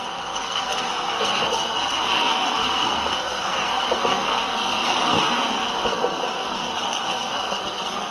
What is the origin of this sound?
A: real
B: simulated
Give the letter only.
B